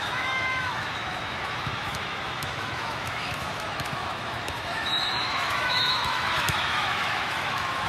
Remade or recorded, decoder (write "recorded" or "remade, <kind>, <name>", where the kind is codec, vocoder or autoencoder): remade, autoencoder, DAC-VAE